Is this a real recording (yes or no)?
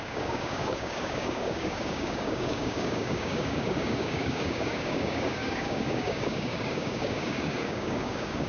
no